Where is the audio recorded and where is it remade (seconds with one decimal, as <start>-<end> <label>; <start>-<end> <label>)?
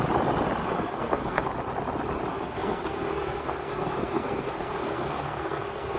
0.0-0.6 recorded; 0.6-1.5 remade; 1.5-2.3 recorded; 2.3-6.0 remade